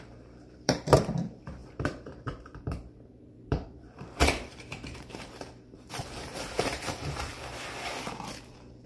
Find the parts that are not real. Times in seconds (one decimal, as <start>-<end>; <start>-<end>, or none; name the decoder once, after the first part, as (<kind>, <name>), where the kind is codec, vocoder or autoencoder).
0.0-7.3 (vocoder, BigVGAN v2); 8.5-8.9